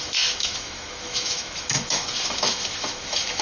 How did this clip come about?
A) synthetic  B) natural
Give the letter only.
A